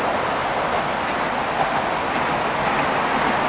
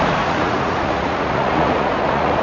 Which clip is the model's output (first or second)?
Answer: second